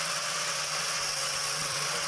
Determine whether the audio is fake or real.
fake